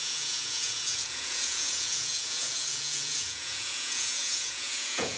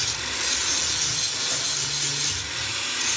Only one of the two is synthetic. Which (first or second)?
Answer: first